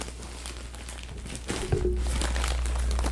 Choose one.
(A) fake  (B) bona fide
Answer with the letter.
B